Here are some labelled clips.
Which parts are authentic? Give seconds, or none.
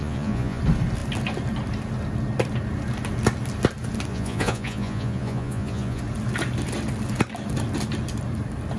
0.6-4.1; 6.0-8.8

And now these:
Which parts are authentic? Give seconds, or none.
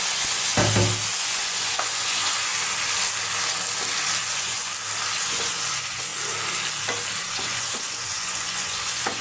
0.5-1.2; 2.5-4.2; 4.7-5.2; 6.1-7.2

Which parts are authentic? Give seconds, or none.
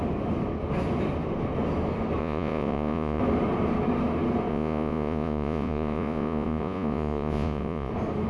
0.0-2.2; 3.2-4.5; 7.9-8.3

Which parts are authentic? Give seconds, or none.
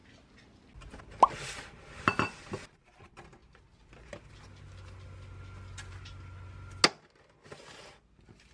0.0-8.5